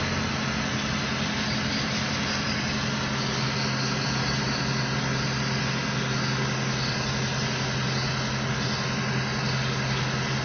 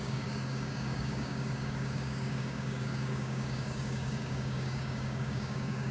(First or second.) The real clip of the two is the first